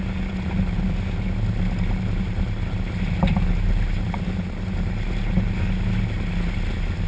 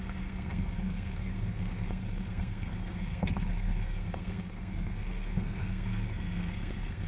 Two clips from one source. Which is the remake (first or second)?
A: second